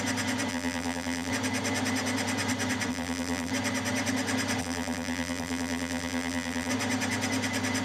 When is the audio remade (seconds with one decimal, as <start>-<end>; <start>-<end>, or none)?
0.5-1.3; 2.9-3.5; 4.6-6.7